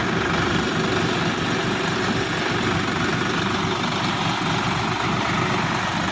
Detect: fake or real real